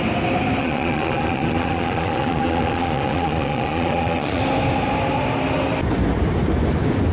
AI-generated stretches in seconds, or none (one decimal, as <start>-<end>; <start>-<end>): 0.6-4.4